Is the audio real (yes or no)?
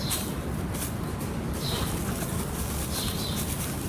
yes